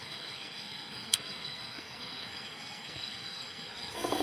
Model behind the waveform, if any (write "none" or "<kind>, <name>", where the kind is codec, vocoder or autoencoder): codec, SNAC